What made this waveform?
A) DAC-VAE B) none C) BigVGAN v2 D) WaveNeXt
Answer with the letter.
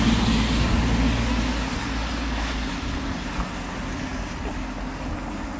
B